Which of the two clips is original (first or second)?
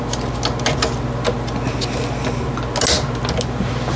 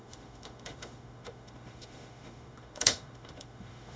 first